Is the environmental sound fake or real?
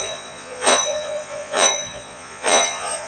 fake